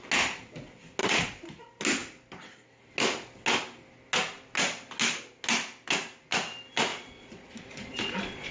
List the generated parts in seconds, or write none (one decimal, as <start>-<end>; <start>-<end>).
1.0-1.6; 6.9-8.5